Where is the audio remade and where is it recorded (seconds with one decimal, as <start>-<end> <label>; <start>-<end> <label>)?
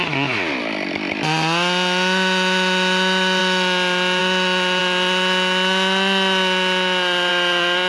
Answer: 0.0-7.9 recorded